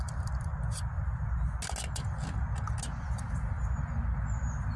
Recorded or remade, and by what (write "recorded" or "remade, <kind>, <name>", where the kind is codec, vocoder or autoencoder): recorded